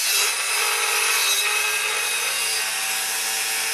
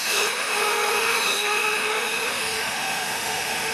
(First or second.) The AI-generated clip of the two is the second